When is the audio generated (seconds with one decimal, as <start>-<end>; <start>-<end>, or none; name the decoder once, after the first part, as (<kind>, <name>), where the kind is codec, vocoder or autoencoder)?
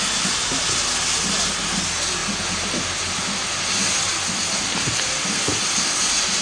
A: none